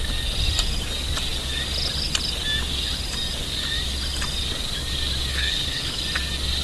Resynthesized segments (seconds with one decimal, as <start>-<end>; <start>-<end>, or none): 5.3-6.0